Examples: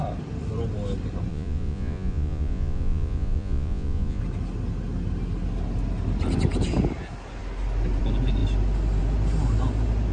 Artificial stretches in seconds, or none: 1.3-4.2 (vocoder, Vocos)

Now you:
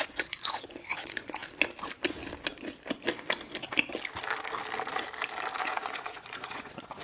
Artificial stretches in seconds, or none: 0.0-1.4 (vocoder, Vocos); 5.6-7.0

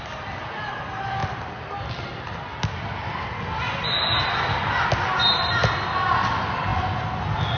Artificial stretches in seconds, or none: none

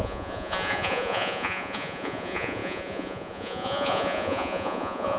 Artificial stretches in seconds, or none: 0.0-5.2 (vocoder, Vocos)